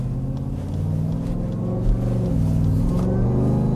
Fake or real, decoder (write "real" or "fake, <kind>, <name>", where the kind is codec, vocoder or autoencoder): real